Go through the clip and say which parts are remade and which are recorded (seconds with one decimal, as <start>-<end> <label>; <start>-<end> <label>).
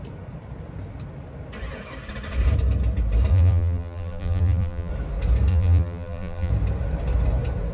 0.0-3.3 recorded; 3.3-4.9 remade; 4.9-5.5 recorded; 5.5-6.5 remade; 6.5-7.7 recorded